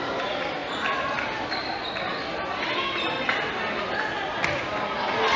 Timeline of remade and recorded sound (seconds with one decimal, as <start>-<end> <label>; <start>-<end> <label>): 0.0-5.4 recorded